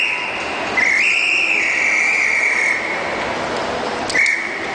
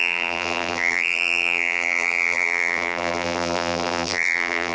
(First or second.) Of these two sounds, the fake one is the second